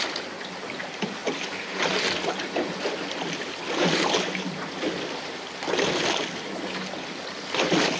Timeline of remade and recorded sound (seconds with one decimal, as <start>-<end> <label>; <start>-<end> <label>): 0.0-8.0 recorded